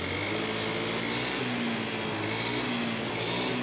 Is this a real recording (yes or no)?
yes